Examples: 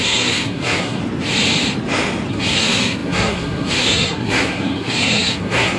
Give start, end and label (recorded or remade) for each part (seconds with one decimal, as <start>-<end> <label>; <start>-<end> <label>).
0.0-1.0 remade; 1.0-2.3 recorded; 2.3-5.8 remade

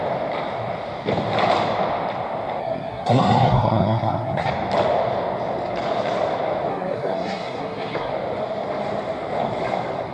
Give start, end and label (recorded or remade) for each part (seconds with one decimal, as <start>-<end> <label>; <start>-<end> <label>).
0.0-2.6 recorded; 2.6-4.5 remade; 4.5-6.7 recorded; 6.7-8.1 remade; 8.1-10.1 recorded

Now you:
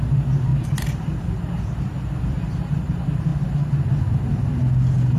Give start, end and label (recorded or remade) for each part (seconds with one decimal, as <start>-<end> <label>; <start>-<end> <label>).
0.0-5.2 recorded

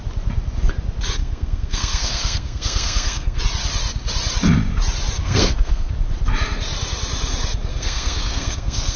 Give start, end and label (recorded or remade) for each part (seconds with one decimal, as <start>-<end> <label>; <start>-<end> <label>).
0.0-1.2 recorded; 1.2-3.4 remade; 3.4-5.2 recorded; 5.2-5.9 remade; 5.9-7.7 recorded; 7.7-9.0 remade

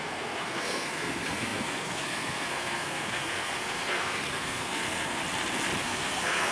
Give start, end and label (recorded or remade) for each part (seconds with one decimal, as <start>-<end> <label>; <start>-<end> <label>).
0.0-5.2 remade; 5.2-5.8 recorded; 5.8-6.5 remade

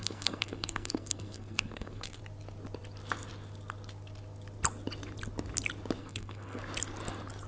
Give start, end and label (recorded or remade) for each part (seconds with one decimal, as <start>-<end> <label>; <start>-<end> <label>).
0.0-2.2 remade; 2.2-6.0 recorded; 6.0-6.6 remade; 6.6-7.5 recorded

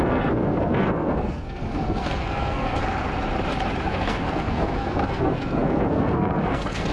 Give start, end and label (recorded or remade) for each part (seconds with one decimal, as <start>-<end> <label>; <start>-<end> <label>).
0.0-2.8 remade; 2.8-3.8 recorded; 3.8-6.9 remade